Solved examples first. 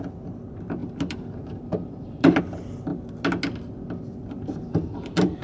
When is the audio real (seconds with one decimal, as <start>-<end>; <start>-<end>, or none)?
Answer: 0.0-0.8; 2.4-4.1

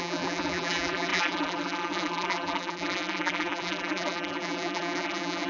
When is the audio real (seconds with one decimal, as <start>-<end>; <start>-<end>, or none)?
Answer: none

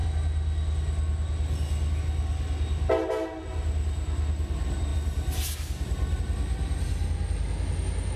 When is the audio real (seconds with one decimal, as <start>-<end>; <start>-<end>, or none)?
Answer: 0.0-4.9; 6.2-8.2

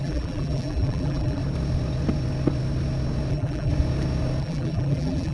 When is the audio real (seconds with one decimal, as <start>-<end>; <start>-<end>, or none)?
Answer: 1.4-3.3; 3.7-4.4

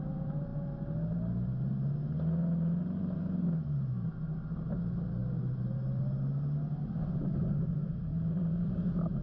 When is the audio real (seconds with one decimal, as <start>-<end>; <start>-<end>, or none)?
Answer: 0.0-5.2; 6.0-6.8; 7.7-8.1; 8.7-9.2